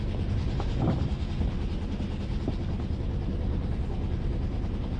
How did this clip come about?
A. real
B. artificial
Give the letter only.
A